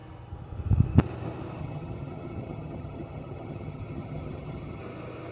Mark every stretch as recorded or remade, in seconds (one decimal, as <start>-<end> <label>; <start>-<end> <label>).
0.0-1.6 recorded; 1.6-4.8 remade; 4.8-5.3 recorded